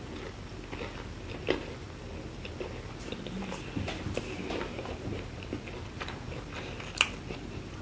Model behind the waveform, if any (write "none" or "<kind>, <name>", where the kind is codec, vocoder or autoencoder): none